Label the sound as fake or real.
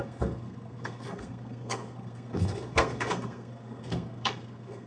fake